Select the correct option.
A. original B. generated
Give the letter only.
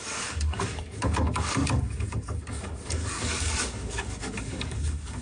B